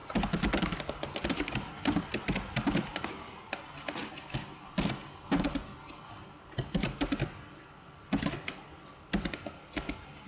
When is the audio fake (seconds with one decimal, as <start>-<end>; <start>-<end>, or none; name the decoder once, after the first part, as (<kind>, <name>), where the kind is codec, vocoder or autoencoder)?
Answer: none